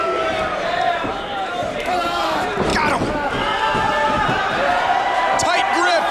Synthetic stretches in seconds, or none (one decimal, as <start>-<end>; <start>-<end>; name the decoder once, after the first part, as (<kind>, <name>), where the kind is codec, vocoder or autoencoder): 1.1-2.7 (vocoder, BigVGAN v2); 3.3-6.1